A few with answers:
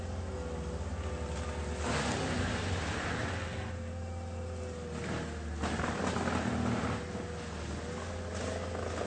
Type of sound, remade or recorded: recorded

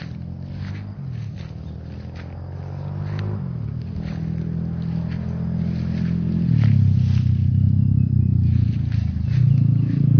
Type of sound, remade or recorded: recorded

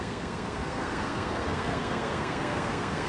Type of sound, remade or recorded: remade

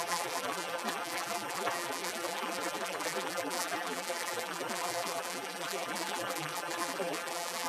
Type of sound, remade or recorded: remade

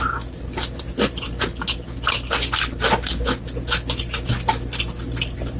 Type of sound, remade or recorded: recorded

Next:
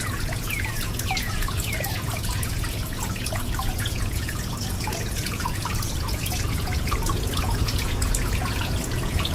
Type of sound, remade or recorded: remade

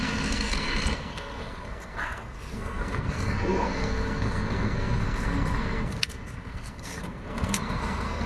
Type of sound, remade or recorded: remade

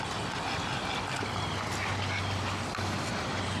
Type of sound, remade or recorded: recorded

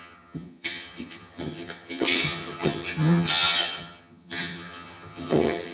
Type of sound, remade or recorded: remade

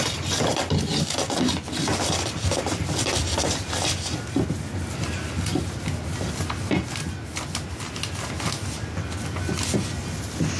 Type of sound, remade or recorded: recorded